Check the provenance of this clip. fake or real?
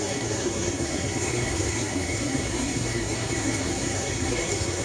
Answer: fake